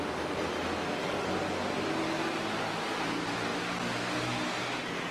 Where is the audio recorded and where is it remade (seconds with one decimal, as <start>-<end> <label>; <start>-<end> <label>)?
0.0-1.0 recorded; 1.0-1.6 remade; 1.6-5.1 recorded